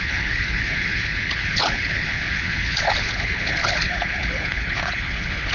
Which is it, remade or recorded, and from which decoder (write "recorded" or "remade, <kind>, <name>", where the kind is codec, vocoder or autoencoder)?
remade, codec, HILCodec